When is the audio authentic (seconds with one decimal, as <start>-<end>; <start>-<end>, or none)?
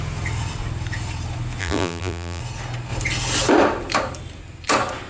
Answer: 0.0-1.6; 2.4-5.1